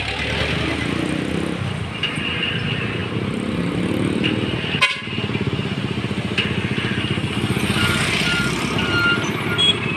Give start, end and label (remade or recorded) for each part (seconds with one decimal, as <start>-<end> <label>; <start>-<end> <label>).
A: 0.0-10.0 recorded